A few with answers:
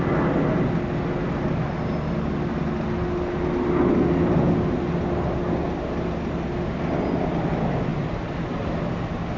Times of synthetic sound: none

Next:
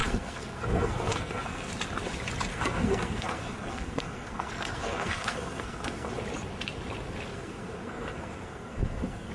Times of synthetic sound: 0.0-1.7 (codec, SNAC); 2.5-6.1; 7.3-9.3

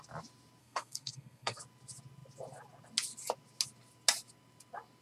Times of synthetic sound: 0.6-1.6 (codec, SNAC)

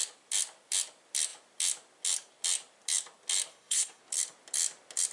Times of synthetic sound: 3.5-4.0 (codec, SNAC)

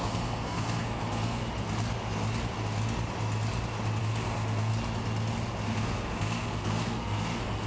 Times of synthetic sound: 0.0-1.4 (codec, SNAC); 4.0-4.7; 5.6-7.7

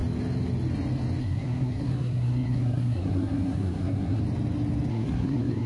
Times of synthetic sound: 1.2-4.2 (codec, SNAC); 4.9-5.7